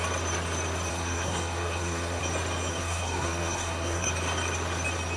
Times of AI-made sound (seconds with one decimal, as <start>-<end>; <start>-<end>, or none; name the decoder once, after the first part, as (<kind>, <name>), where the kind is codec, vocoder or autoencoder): 0.9-2.2 (codec, SNAC); 2.7-4.1